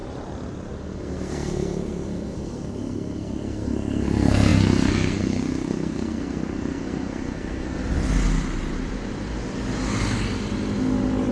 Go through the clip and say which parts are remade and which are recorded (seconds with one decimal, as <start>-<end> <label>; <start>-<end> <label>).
0.0-0.8 recorded; 0.8-7.8 remade; 7.8-11.3 recorded